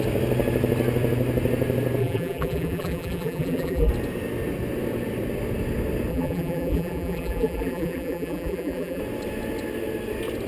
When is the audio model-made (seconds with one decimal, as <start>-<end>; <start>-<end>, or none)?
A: 2.0-3.9; 6.1-9.0